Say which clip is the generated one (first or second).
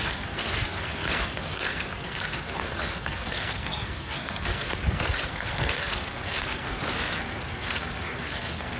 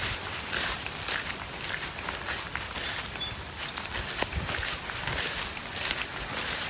first